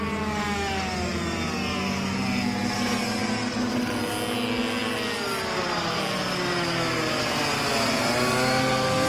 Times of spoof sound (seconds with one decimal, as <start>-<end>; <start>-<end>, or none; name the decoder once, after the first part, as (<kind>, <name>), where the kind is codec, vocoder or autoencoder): none